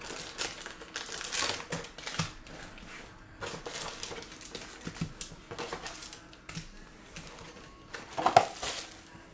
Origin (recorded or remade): recorded